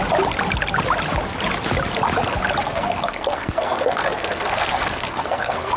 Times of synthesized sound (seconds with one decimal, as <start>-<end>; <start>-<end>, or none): 2.6-5.8